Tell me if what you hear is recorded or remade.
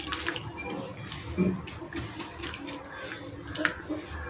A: recorded